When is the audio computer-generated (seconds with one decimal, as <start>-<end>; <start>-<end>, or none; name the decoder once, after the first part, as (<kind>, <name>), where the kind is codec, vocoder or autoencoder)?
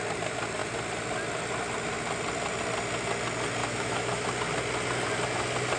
3.6-4.3 (autoencoder, DAC-VAE)